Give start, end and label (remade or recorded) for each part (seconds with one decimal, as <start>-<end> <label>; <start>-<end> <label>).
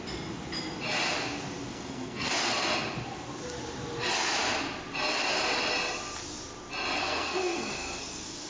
0.0-1.7 recorded; 1.7-2.3 remade; 2.3-7.0 recorded; 7.0-8.5 remade